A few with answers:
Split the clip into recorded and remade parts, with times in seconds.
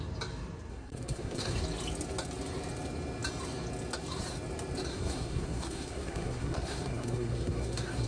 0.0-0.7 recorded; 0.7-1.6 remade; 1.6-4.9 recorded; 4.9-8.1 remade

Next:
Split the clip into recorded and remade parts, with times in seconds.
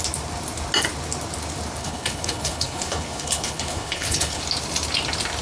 0.0-1.8 recorded; 1.8-4.4 remade; 4.4-5.4 recorded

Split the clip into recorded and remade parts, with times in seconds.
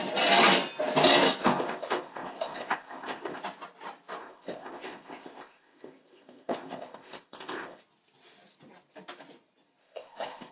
0.0-1.4 recorded; 1.4-3.4 remade; 3.4-4.2 recorded; 4.2-7.8 remade; 7.8-9.8 recorded; 9.8-10.5 remade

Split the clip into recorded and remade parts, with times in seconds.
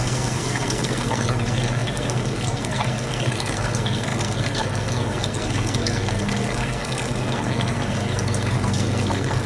0.0-9.5 remade